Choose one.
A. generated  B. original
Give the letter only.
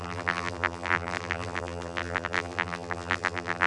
A